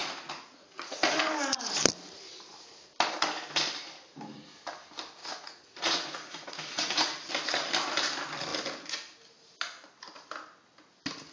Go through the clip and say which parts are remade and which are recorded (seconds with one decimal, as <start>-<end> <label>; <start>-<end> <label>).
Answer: 0.0-1.2 remade; 1.2-5.2 recorded; 5.2-7.3 remade; 7.3-11.3 recorded